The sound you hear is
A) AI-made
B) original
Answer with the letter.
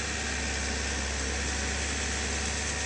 B